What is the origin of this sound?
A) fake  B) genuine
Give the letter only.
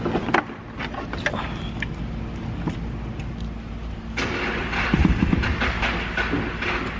B